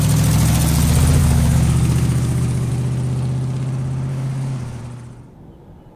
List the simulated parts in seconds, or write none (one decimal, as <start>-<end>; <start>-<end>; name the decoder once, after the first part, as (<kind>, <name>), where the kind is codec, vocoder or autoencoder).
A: 1.2-2.7 (codec, DAC); 4.1-4.8